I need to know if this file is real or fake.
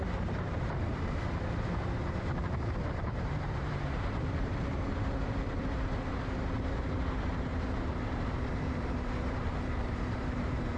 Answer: fake